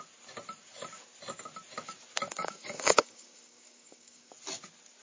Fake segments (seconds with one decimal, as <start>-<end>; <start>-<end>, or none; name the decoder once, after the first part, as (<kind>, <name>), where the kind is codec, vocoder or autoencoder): 2.4-4.3 (codec, DAC)